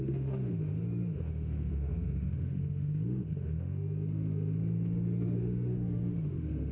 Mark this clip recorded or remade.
remade